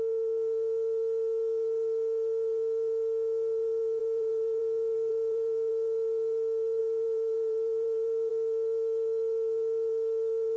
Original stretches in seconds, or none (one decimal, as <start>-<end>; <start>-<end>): 0.0-4.0; 4.6-5.1; 5.7-6.8; 8.3-10.6